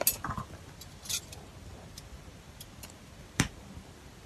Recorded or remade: recorded